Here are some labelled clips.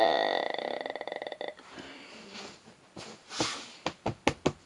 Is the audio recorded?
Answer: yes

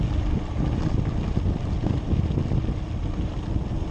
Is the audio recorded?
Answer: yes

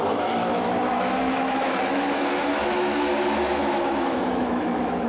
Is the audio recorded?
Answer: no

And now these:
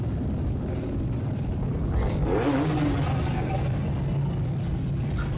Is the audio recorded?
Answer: yes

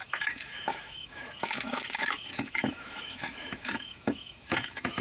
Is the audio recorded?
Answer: no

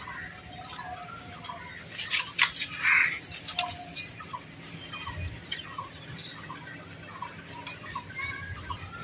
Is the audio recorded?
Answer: yes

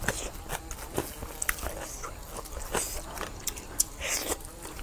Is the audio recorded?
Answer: yes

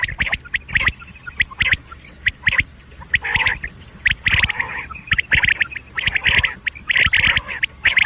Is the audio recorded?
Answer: yes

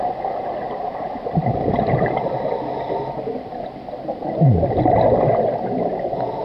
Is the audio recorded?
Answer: yes